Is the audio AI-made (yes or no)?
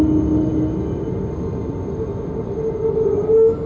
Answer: no